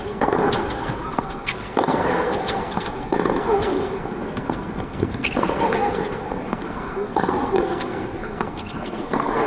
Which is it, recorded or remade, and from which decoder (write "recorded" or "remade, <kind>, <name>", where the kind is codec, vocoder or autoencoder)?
remade, codec, SNAC